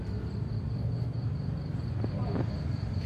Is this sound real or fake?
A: real